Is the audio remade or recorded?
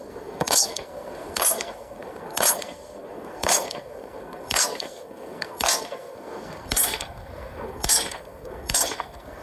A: remade